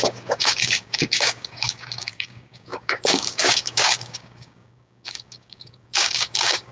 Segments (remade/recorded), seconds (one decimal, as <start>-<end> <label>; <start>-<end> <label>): 0.0-6.7 remade